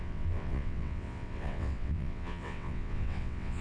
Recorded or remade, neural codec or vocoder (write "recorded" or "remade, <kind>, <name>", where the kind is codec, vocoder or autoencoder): remade, vocoder, WaveNeXt